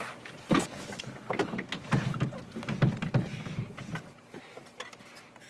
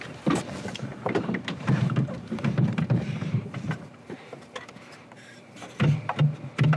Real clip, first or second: first